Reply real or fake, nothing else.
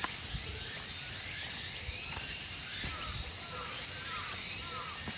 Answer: real